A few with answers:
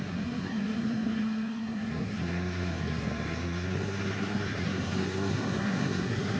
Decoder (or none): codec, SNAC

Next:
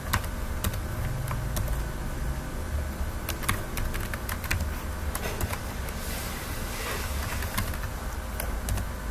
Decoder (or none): none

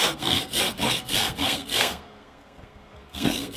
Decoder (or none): codec, SNAC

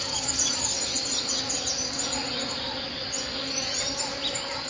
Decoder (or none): none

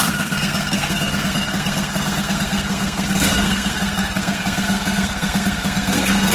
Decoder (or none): codec, SNAC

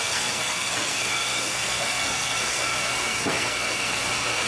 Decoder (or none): codec, SNAC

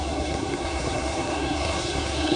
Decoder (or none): codec, SNAC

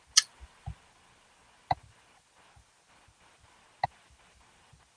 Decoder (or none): none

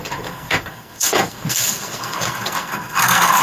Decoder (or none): codec, SNAC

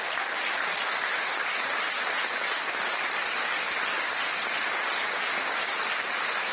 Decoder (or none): none